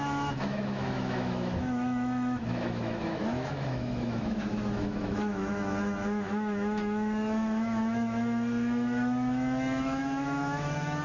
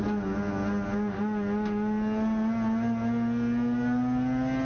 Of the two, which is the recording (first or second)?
second